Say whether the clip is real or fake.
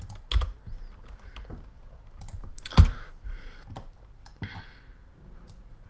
real